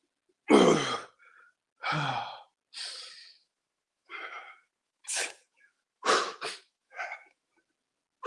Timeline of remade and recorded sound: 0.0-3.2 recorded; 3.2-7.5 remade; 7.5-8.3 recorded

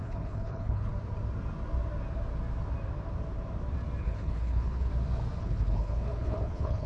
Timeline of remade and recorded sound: 0.0-0.9 remade; 0.9-4.0 recorded; 4.0-4.9 remade; 4.9-5.4 recorded; 5.4-6.9 remade

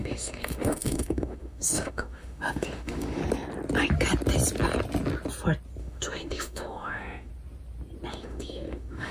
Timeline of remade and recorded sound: 0.0-3.2 remade; 3.2-5.8 recorded; 5.8-7.3 remade; 7.3-8.1 recorded; 8.1-9.1 remade

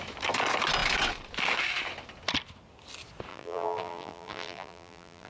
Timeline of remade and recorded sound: 0.0-3.3 recorded; 3.3-5.3 remade

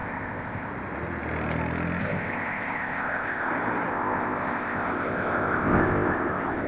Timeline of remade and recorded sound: 0.0-0.7 remade; 0.7-2.0 recorded; 2.0-3.5 remade; 3.5-3.9 recorded; 3.9-6.7 remade

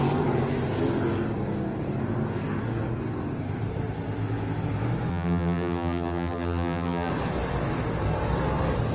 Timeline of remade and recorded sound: 0.0-5.1 recorded; 5.1-7.1 remade; 7.1-8.9 recorded

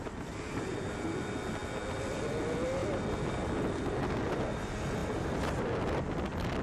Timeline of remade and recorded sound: 0.0-6.6 recorded